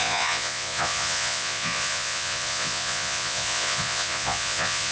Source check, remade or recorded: remade